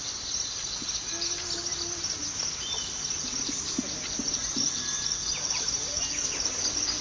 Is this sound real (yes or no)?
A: yes